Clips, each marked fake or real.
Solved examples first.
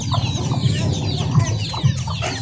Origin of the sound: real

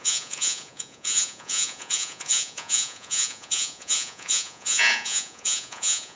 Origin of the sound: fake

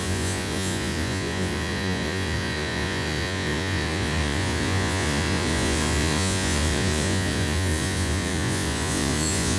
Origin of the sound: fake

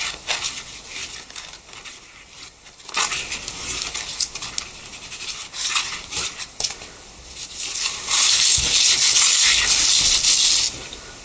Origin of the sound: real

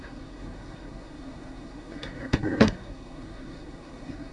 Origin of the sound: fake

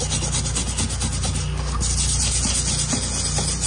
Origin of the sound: real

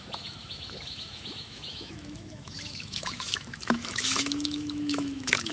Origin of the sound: fake